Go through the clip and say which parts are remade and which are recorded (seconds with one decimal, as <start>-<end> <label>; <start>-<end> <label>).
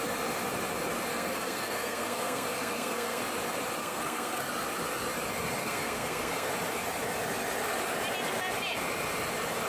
0.0-1.1 recorded; 1.1-3.2 remade; 3.2-3.8 recorded; 3.8-4.5 remade; 4.5-5.6 recorded; 5.6-6.5 remade; 6.5-9.7 recorded